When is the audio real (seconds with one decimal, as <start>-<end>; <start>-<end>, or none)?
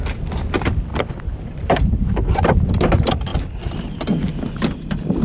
0.0-0.9; 2.7-5.2